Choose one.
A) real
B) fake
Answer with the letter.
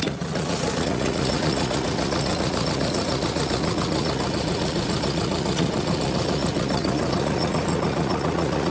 B